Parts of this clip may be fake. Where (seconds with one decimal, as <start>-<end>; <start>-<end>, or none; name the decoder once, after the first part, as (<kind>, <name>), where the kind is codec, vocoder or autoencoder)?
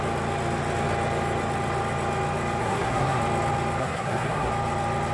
2.6-3.2 (codec, SNAC); 3.8-4.5